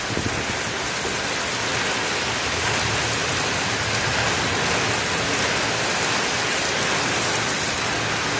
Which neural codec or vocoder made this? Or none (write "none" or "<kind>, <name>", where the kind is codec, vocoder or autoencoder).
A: none